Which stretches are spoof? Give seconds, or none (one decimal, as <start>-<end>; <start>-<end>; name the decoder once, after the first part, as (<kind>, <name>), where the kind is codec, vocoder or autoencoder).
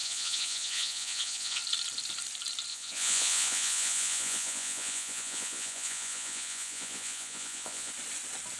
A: 0.0-1.6 (vocoder, Vocos); 2.7-7.9